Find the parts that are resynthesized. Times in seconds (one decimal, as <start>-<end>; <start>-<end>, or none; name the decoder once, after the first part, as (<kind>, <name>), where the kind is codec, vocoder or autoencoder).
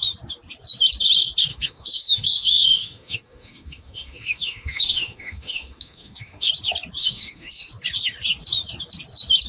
1.5-6.5 (autoencoder, DAC-VAE); 7.0-7.7